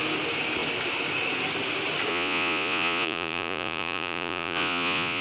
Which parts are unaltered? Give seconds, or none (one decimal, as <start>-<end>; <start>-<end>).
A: 0.0-2.1